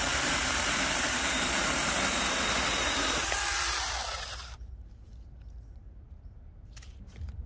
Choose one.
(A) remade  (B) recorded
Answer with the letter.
A